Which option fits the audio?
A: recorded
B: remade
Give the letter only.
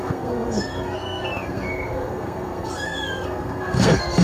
B